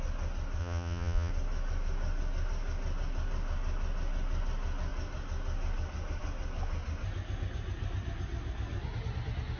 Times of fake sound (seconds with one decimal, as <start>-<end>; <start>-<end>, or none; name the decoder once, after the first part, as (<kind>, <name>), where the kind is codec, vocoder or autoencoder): 0.6-1.3 (vocoder, Vocos)